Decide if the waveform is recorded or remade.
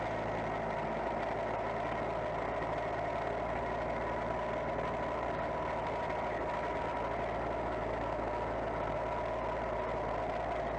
recorded